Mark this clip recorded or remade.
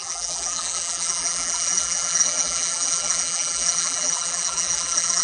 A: remade